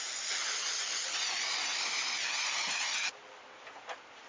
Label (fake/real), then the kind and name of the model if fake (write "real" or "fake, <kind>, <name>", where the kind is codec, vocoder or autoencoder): real